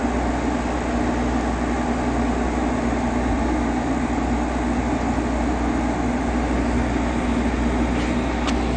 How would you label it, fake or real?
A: real